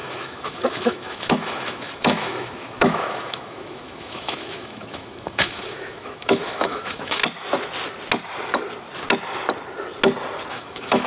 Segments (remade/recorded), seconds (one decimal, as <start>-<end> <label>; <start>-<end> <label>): 0.0-7.2 remade; 7.2-10.5 recorded; 10.5-11.1 remade